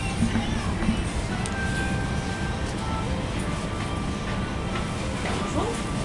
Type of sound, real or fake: real